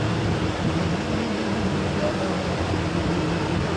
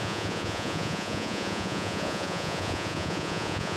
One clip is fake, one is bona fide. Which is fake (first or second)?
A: second